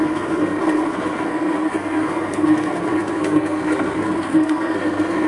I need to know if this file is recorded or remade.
remade